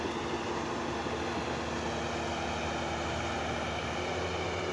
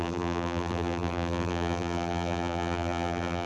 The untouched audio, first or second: first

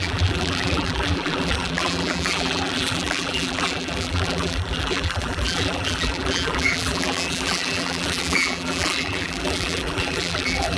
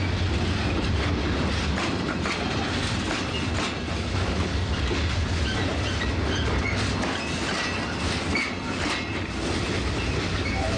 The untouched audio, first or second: second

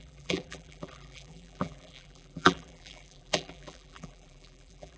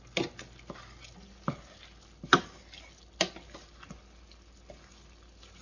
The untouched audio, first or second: second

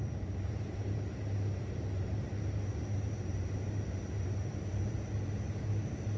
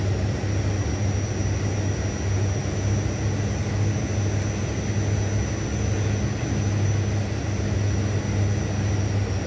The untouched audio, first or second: second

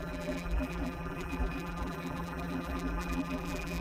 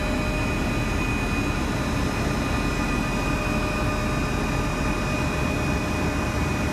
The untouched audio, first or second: second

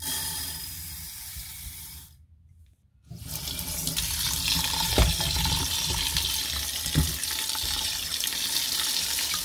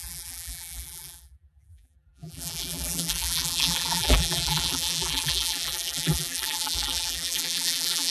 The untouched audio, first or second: first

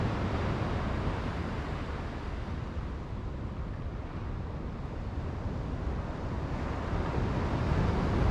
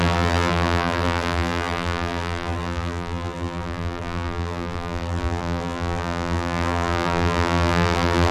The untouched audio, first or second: first